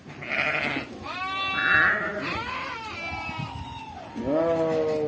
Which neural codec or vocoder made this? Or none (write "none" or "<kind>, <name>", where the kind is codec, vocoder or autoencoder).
none